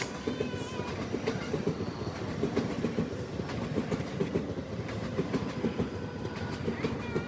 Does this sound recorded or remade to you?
recorded